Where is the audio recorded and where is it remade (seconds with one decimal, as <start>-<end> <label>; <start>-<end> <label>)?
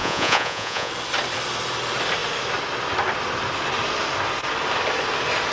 0.0-0.9 remade; 0.9-5.5 recorded